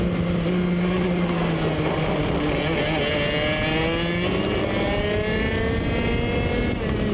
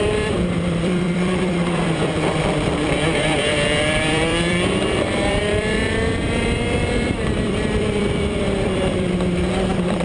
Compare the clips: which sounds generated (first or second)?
second